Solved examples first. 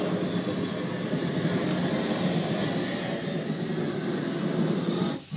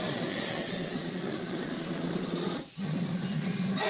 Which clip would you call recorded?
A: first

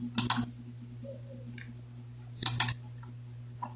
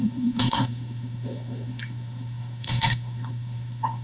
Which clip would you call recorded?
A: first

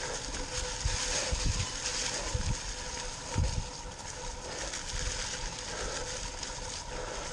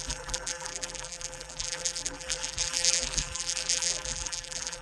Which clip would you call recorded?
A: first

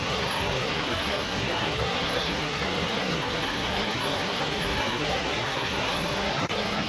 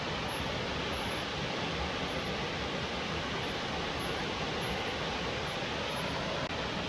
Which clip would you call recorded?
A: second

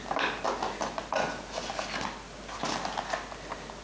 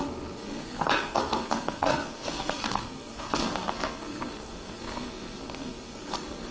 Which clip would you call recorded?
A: first